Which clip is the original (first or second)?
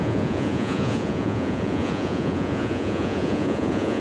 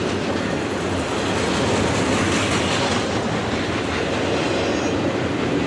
second